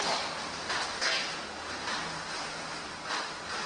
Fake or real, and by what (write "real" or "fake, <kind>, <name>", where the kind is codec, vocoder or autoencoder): real